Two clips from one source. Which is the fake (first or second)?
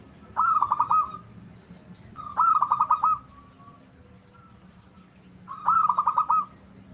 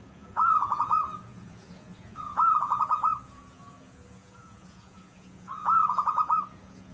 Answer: second